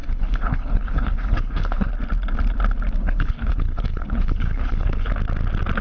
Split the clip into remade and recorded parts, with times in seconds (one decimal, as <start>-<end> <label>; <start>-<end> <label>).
0.0-1.9 remade; 1.9-3.0 recorded; 3.0-5.1 remade; 5.1-5.8 recorded